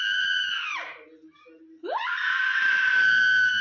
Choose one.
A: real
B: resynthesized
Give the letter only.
A